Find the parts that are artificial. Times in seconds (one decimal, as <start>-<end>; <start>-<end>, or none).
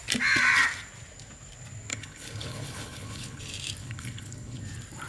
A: 1.9-3.4; 3.8-4.6